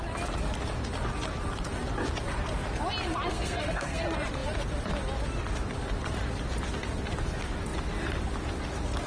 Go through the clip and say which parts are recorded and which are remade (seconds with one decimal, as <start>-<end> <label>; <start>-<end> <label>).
0.0-3.3 recorded; 3.3-4.0 remade; 4.0-9.1 recorded